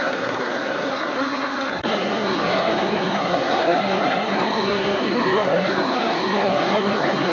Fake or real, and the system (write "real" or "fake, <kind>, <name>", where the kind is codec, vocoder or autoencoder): fake, codec, SNAC